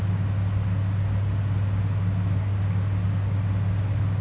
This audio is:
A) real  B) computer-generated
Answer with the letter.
A